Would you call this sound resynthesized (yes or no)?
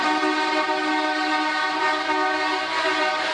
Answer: no